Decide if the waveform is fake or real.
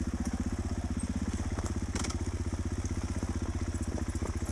real